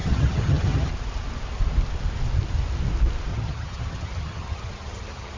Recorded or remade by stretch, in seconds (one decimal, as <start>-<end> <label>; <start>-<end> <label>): 0.0-0.9 remade; 0.9-3.3 recorded; 3.3-5.4 remade